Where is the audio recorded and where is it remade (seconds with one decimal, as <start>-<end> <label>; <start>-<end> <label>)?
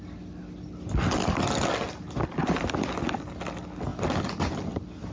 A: 0.0-5.1 recorded